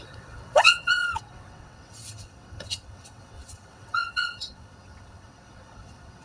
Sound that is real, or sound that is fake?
fake